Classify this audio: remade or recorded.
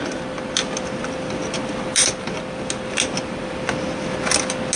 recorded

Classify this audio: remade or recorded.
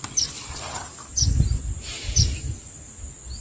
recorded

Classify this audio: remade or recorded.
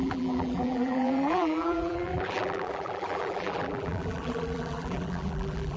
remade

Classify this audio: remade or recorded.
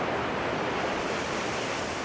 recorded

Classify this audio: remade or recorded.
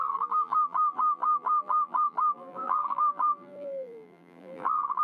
remade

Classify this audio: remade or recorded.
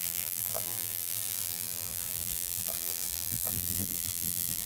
remade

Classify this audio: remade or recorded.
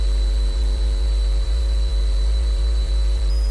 remade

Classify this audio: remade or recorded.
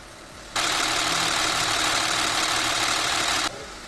recorded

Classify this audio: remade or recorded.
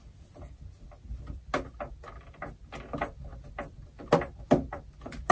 recorded